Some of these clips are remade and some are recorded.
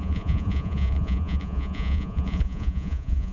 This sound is remade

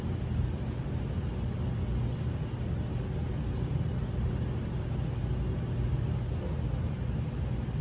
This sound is recorded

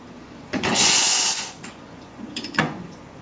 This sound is remade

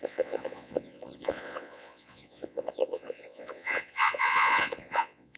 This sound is remade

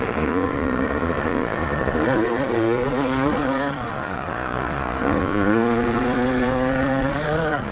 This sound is remade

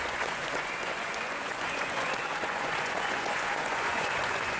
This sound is remade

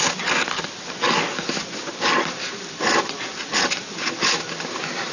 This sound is recorded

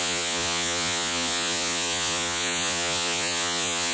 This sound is remade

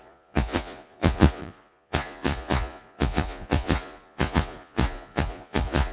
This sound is remade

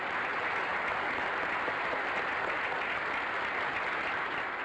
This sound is recorded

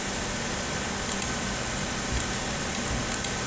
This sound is recorded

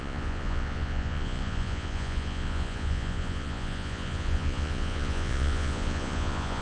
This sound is remade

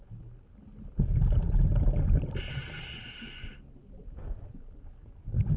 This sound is recorded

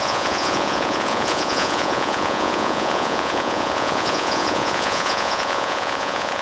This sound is remade